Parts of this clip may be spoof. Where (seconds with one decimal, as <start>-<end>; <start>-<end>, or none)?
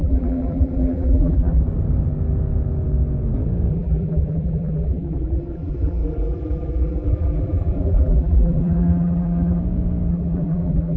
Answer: 0.0-1.6; 3.7-9.6; 10.1-11.0